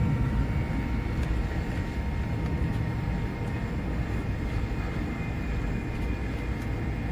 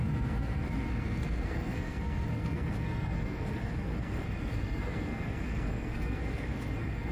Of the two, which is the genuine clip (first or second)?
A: first